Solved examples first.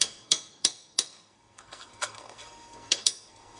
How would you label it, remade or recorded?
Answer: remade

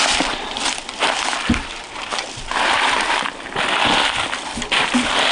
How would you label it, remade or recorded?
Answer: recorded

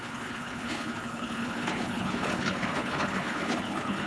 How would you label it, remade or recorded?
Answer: remade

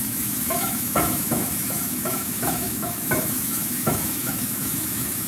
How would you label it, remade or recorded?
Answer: remade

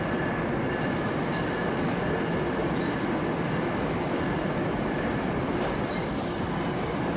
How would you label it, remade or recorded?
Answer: remade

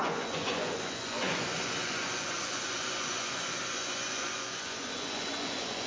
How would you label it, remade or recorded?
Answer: remade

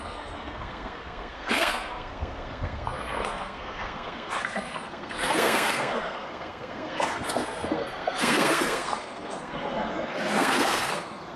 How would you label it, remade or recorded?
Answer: remade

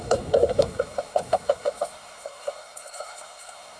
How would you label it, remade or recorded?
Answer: remade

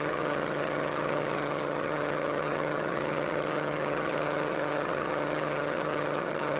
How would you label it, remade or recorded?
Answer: remade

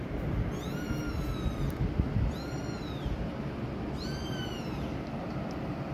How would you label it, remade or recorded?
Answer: recorded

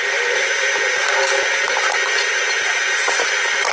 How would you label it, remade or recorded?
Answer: recorded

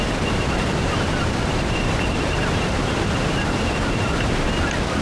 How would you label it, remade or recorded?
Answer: remade